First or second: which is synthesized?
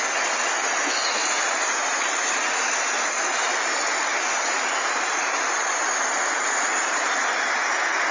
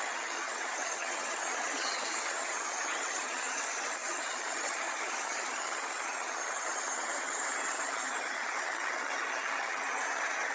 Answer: second